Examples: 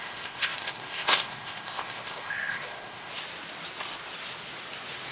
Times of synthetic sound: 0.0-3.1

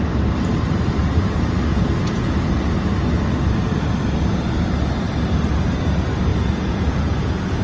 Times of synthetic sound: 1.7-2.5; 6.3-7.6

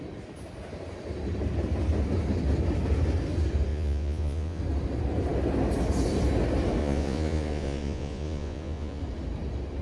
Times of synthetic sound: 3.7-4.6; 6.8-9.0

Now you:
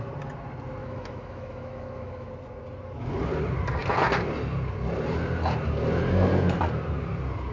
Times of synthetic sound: 0.8-2.3

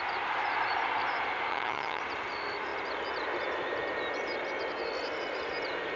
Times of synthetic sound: 1.5-2.0

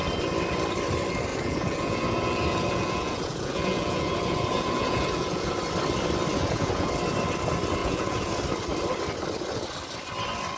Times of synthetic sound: 1.3-5.5; 6.3-6.9; 7.8-8.4

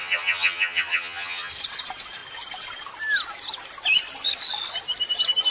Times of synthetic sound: 0.0-1.5

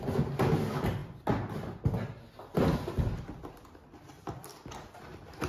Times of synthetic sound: none